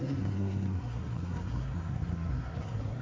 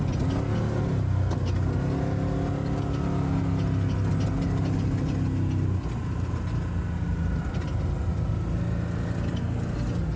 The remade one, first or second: first